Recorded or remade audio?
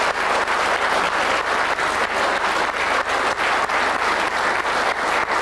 recorded